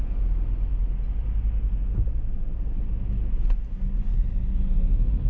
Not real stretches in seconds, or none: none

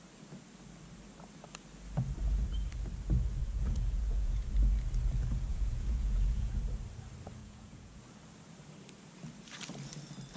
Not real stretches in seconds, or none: 3.4-4.5 (vocoder, Vocos); 5.5-6.5; 7.4-8.0

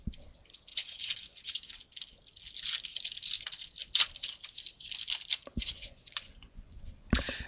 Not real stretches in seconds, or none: 0.7-1.7 (vocoder, Vocos); 5.5-7.1

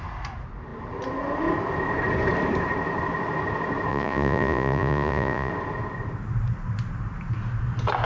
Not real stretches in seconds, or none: 3.9-5.5 (vocoder, Vocos)

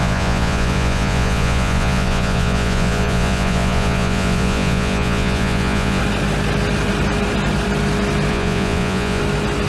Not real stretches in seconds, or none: 0.0-6.0 (vocoder, Vocos); 8.3-9.2